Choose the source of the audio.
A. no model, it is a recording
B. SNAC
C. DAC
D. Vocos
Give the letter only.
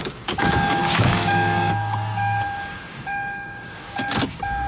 C